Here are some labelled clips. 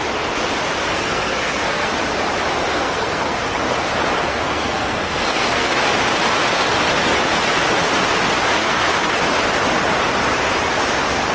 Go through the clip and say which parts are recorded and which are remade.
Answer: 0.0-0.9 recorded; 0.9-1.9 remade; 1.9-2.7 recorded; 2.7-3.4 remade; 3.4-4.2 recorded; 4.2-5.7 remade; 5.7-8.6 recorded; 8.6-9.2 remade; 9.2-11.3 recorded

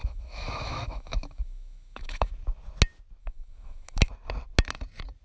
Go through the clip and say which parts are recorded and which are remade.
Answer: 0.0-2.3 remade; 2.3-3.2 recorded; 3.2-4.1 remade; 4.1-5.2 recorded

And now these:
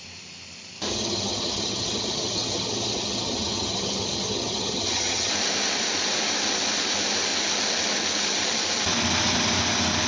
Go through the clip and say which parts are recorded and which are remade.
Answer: 0.0-0.9 recorded; 0.9-5.3 remade; 5.3-10.1 recorded

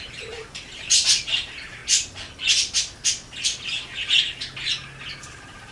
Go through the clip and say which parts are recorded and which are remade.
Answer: 0.0-1.8 remade; 1.8-5.2 recorded; 5.2-5.7 remade